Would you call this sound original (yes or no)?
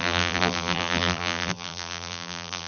no